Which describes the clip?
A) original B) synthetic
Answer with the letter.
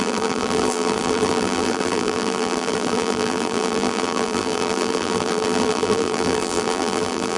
B